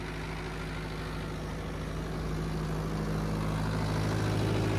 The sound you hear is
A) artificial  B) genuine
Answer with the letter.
B